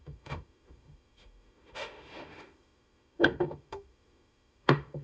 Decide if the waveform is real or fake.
fake